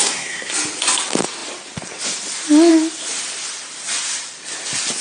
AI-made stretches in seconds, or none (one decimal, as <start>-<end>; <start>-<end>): 0.0-0.5